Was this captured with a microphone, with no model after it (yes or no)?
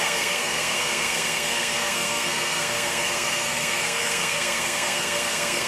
no